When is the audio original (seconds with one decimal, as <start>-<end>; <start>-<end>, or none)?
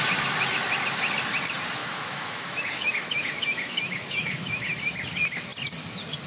0.0-1.8; 4.8-6.3